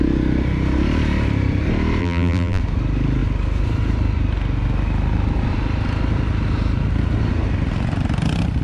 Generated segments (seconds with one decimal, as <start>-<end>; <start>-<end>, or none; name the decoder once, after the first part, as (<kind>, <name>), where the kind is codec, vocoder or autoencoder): 2.0-2.6 (vocoder, BigVGAN v2)